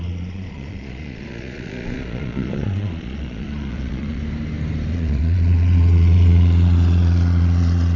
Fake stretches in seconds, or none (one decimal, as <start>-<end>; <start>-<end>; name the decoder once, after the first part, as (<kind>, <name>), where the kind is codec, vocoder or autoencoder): 0.0-4.2 (vocoder, Vocos); 4.9-8.0